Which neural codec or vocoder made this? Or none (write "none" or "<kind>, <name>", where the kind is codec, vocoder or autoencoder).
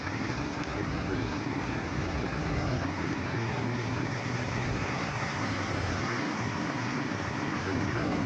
codec, SNAC